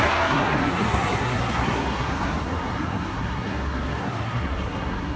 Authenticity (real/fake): fake